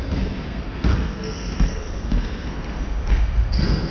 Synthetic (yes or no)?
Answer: yes